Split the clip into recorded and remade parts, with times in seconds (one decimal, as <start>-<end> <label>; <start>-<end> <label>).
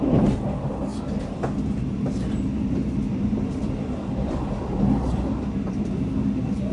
0.0-6.7 recorded